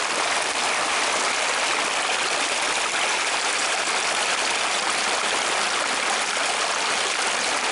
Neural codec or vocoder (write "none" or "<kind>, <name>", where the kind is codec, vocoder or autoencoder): none